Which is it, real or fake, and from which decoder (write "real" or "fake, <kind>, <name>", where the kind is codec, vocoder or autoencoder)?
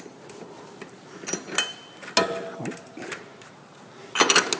real